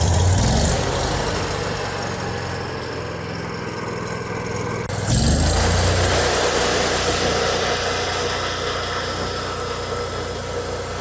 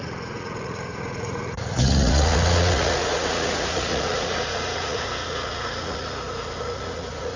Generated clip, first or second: second